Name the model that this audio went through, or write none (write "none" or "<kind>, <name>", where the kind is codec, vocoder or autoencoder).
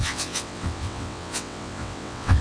vocoder, WaveNeXt